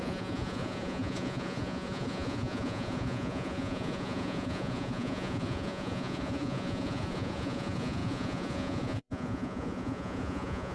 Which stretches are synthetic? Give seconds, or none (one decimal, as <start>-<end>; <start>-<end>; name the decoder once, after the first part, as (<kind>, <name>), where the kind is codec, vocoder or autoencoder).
0.0-10.7 (vocoder, Vocos)